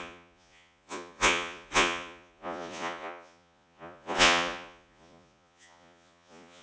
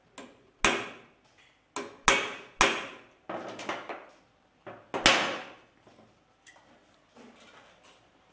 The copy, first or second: first